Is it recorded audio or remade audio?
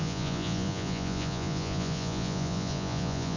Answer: remade